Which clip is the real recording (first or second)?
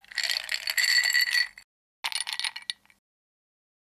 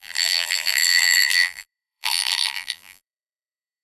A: first